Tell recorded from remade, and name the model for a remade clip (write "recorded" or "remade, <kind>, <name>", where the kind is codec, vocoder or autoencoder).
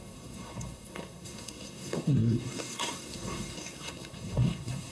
remade, codec, SNAC